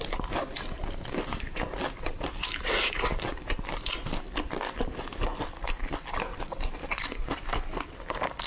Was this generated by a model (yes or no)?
yes